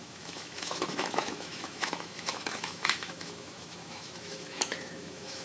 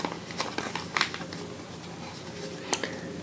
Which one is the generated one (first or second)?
first